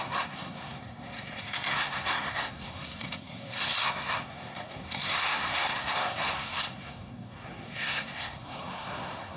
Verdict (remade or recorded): remade